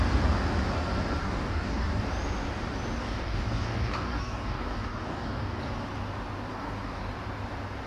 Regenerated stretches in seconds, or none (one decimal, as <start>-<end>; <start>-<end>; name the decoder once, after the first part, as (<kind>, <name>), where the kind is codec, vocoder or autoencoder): 1.2-2.0 (codec, DAC); 3.0-5.6; 6.5-7.0